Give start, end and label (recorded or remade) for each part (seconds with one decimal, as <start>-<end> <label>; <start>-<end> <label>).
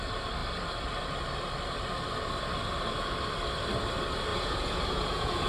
0.0-4.3 recorded; 4.3-5.5 remade